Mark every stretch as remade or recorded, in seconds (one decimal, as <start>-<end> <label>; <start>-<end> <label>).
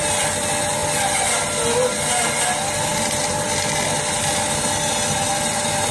0.0-5.9 recorded